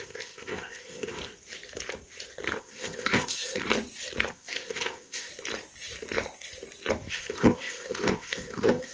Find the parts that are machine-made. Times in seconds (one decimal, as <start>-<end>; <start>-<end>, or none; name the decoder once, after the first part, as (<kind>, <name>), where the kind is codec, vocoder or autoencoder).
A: 0.0-1.2 (codec, ZipCodec); 2.6-3.7; 4.3-5.3; 7.1-8.9